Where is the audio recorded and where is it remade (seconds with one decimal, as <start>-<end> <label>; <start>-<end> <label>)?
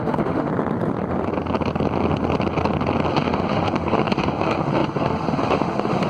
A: 0.0-0.5 remade; 0.5-3.1 recorded; 3.1-6.1 remade